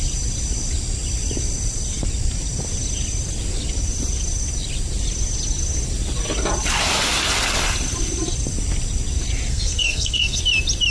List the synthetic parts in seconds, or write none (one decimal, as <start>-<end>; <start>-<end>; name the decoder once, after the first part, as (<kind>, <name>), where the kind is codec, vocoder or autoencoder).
9.5-10.4 (codec, SNAC)